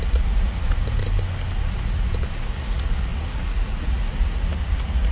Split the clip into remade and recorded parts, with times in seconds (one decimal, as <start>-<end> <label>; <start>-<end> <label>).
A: 0.0-1.0 remade; 1.0-1.6 recorded; 1.6-5.1 remade